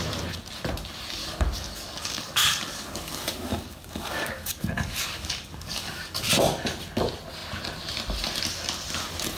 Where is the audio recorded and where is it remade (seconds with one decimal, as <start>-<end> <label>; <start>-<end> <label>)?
0.0-1.2 recorded; 1.2-6.3 remade; 6.3-9.4 recorded